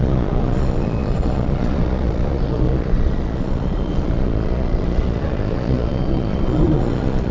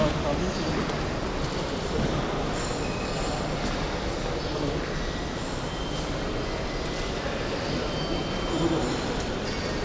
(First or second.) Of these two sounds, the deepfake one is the first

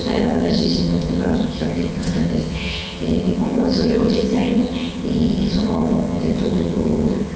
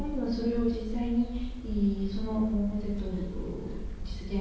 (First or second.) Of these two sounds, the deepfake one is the first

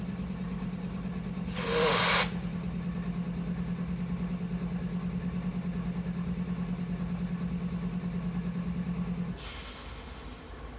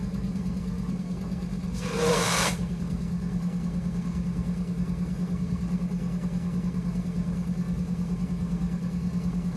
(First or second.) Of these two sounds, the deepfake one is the second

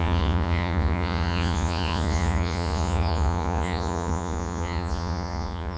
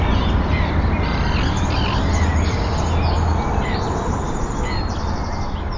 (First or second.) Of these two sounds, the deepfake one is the first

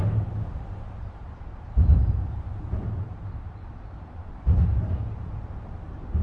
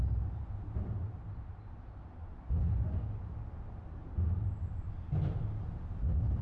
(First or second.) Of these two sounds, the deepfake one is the first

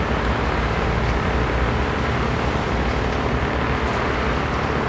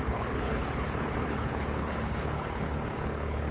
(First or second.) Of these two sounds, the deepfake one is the second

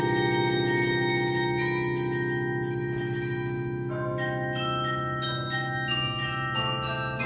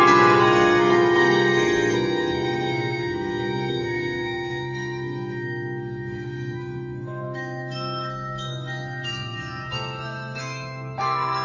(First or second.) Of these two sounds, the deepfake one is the second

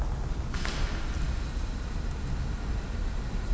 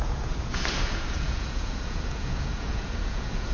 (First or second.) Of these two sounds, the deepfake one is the second